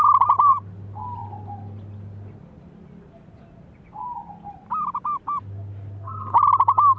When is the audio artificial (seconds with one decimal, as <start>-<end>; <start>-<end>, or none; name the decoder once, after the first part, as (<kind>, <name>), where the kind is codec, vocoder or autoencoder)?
none